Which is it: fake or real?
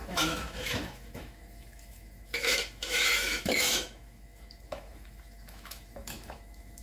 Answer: fake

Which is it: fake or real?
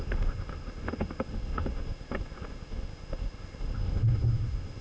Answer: fake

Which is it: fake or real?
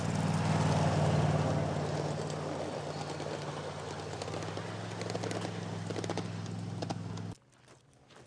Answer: real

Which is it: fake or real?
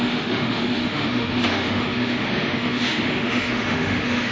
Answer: fake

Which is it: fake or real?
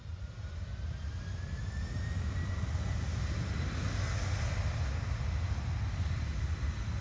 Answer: real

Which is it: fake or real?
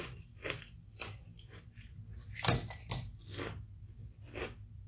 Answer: real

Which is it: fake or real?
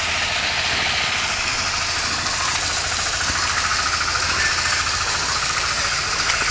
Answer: real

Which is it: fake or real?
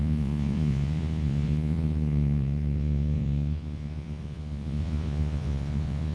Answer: fake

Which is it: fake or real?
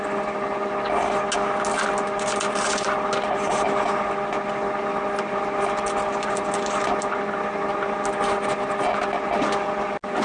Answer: real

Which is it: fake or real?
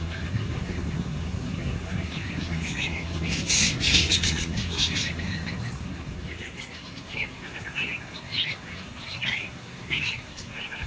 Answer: fake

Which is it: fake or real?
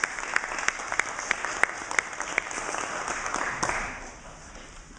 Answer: real